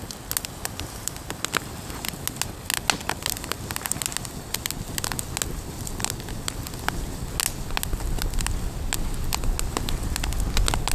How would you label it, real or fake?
real